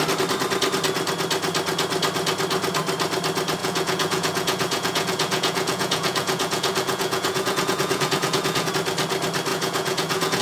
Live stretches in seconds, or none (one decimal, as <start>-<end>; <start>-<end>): 0.0-3.6; 8.7-9.5